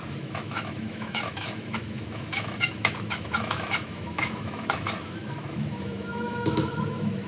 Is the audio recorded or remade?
remade